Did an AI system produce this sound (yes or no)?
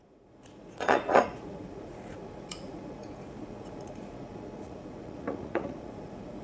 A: yes